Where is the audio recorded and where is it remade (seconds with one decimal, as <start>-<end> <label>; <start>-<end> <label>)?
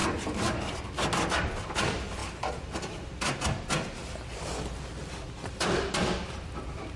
0.0-2.2 recorded; 2.2-3.1 remade; 3.1-7.0 recorded